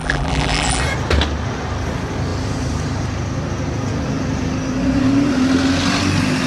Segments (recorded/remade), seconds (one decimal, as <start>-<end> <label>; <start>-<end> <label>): 0.0-0.8 remade; 0.8-6.5 recorded